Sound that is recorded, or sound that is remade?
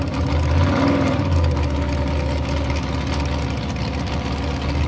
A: recorded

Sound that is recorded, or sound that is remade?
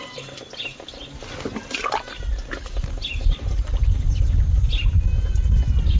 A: recorded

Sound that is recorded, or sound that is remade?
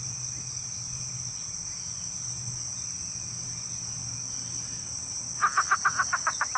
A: recorded